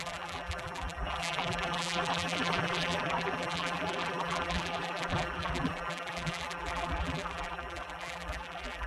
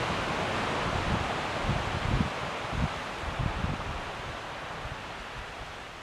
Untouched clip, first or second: second